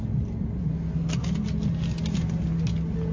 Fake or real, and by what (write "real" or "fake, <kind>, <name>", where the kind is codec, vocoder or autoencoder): real